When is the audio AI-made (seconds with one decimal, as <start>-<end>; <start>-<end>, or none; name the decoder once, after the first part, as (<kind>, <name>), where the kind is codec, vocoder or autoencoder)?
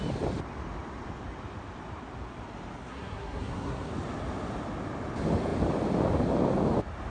2.9-3.9 (codec, SNAC)